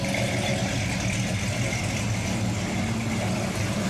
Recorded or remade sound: recorded